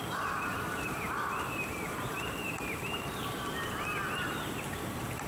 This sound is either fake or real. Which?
fake